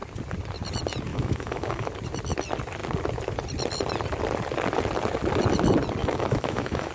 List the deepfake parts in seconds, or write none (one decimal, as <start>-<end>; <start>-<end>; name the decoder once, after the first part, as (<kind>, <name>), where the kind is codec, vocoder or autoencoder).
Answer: 1.1-1.9 (autoencoder, DAC-VAE); 6.0-6.9